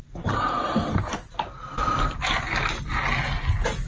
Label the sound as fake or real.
real